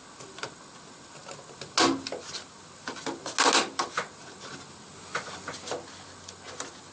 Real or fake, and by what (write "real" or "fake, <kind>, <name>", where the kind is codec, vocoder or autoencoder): real